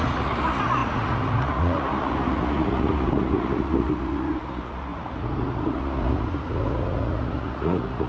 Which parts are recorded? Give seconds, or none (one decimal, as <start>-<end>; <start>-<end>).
none